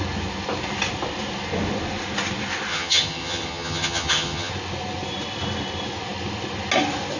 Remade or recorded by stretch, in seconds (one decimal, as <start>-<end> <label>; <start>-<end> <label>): 0.0-2.7 recorded; 2.7-4.5 remade; 4.5-7.2 recorded